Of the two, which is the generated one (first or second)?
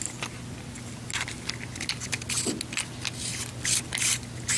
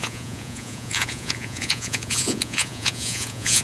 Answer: second